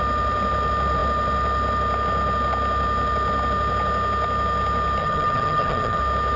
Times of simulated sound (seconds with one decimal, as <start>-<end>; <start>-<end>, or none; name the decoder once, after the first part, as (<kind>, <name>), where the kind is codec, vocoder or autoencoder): 5.0-6.0 (vocoder, HiFi-GAN)